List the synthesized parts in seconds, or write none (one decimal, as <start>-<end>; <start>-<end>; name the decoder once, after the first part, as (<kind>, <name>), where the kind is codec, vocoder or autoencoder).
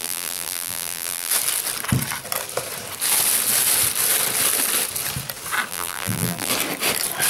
0.0-1.3 (vocoder, BigVGAN v2); 5.7-6.5